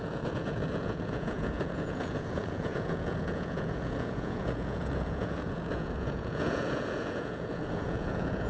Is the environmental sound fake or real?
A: fake